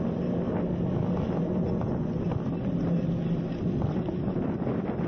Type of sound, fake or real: real